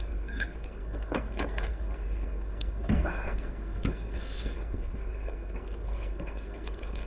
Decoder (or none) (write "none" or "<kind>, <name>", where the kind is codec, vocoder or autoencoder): codec, SNAC